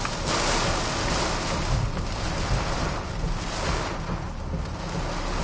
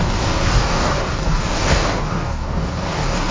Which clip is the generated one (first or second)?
second